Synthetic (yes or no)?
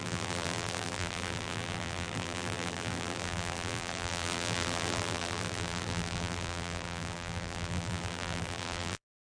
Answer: yes